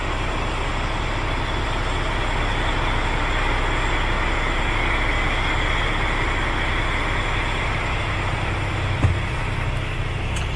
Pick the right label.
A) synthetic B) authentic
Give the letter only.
B